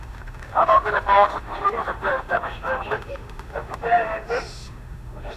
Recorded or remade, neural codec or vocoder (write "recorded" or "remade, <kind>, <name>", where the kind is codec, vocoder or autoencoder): remade, autoencoder, DAC-VAE